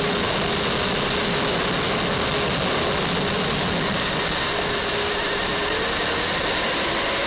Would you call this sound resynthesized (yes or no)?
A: no